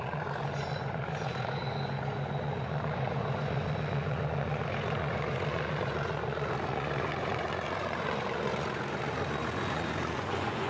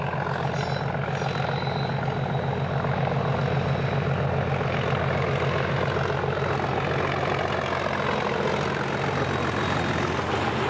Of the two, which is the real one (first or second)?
second